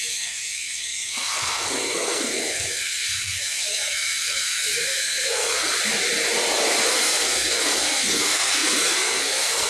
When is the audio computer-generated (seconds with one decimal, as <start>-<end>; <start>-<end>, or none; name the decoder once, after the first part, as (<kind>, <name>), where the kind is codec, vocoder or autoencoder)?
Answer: 0.0-5.7 (codec, SNAC); 6.9-9.7